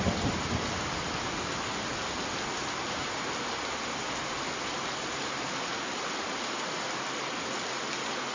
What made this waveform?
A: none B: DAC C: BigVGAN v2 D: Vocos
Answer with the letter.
A